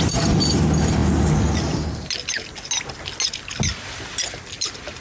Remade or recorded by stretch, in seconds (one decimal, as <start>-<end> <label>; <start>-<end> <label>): 0.0-5.0 recorded